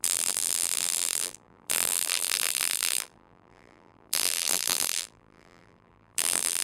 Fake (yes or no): yes